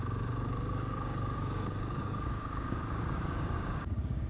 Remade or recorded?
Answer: remade